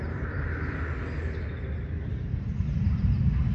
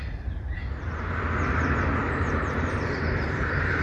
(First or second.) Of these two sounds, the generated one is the second